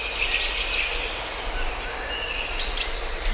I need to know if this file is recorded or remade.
recorded